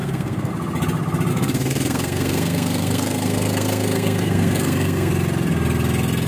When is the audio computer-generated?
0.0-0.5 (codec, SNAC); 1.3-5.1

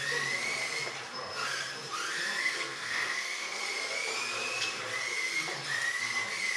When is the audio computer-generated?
2.4-3.6 (codec, SNAC)

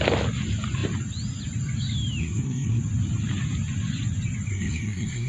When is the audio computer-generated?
2.2-2.8 (codec, SNAC); 4.5-5.3